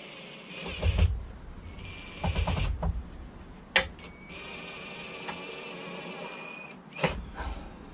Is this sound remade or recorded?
recorded